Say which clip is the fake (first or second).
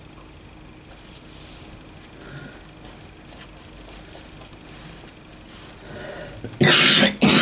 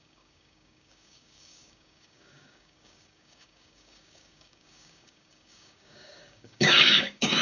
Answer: second